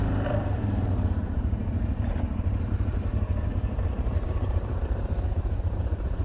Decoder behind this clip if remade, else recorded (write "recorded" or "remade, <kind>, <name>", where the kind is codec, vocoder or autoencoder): remade, vocoder, BigVGAN v2